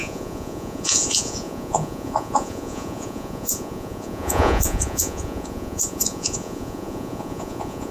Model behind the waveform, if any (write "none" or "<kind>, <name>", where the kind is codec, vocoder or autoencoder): vocoder, Vocos